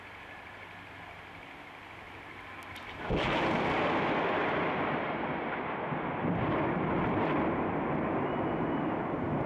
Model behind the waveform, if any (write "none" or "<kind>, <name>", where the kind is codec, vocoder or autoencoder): none